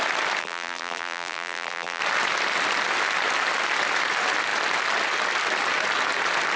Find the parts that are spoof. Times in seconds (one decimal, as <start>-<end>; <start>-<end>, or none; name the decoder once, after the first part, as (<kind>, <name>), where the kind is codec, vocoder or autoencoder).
0.4-2.0 (vocoder, BigVGAN v2)